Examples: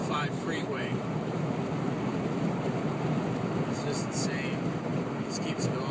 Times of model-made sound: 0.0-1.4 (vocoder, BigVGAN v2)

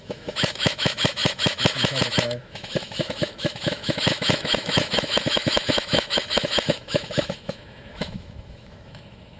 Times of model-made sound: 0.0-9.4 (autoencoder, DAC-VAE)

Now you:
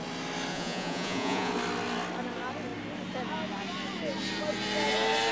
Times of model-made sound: 0.5-1.5 (vocoder, Vocos)

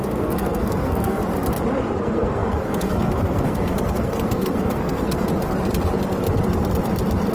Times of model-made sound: 0.0-1.2 (codec, SNAC); 2.0-5.3

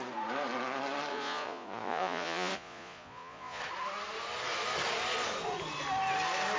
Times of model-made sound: 1.1-3.6 (vocoder, Vocos)